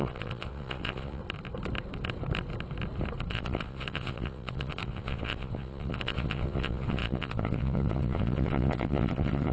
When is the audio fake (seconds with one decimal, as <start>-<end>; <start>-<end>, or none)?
0.0-1.2; 3.3-9.5